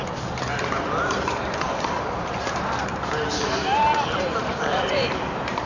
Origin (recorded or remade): remade